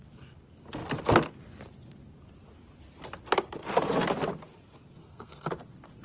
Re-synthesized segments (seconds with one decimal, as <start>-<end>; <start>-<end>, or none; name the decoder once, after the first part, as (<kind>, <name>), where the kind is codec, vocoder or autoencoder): 5.0-5.5 (codec, SNAC)